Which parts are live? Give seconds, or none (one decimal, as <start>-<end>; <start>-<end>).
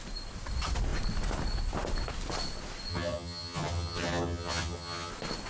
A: 0.0-2.9; 5.1-5.5